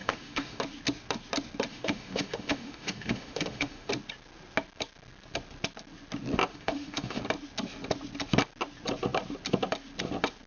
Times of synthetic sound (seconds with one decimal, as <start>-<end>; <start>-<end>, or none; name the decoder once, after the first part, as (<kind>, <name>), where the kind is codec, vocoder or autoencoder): 0.0-0.6 (autoencoder, DAC-VAE); 1.7-3.9; 6.5-7.2